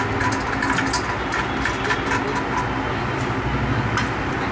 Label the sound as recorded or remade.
recorded